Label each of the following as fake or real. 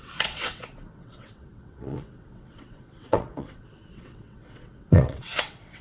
fake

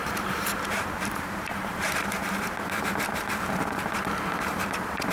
fake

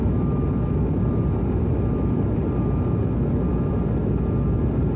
real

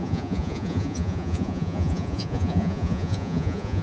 fake